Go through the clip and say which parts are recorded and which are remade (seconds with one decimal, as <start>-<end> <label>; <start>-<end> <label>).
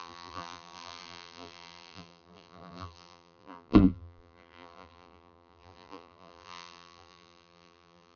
0.0-8.2 remade